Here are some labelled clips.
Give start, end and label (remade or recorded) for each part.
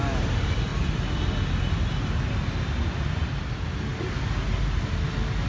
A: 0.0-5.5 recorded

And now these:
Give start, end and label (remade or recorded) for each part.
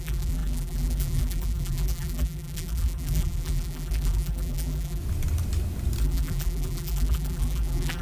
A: 0.0-5.0 remade; 5.0-6.0 recorded; 6.0-8.0 remade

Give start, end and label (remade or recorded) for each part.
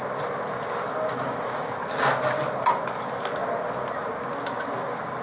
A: 0.0-5.2 recorded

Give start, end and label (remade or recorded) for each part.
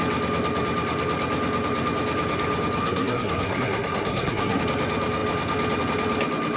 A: 0.0-2.8 recorded; 2.8-4.6 remade; 4.6-6.6 recorded